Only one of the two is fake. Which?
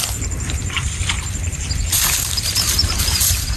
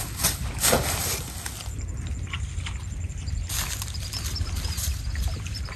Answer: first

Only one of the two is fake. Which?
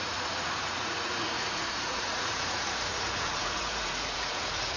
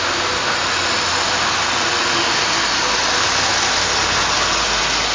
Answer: first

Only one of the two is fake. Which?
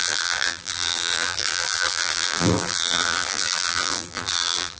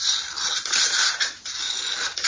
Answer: first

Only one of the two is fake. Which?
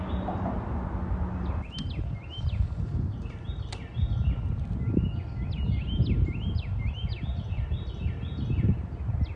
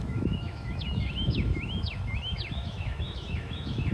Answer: second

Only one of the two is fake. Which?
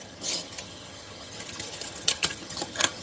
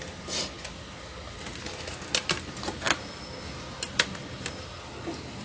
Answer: first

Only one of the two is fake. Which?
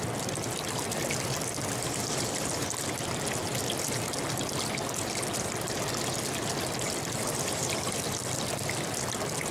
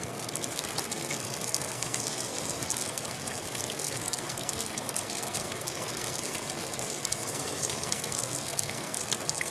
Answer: second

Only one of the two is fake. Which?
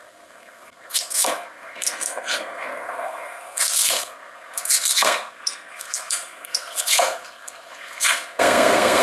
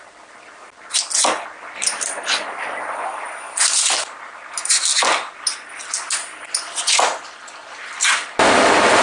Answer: first